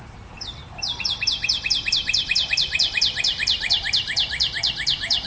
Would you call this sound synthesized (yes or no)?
yes